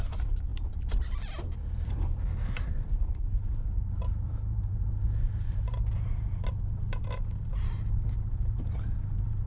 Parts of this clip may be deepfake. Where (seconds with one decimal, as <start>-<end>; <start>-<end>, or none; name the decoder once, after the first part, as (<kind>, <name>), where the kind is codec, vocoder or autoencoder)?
0.0-9.5 (vocoder, BigVGAN v2)